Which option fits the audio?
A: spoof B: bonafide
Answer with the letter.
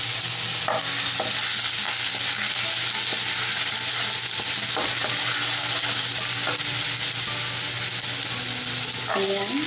B